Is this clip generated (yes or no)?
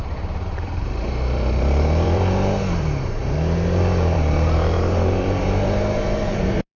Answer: yes